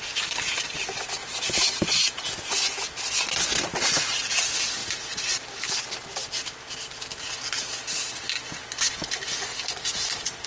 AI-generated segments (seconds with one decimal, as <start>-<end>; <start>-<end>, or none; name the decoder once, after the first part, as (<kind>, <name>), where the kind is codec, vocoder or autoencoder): 1.2-2.5 (vocoder, BigVGAN v2); 4.8-5.7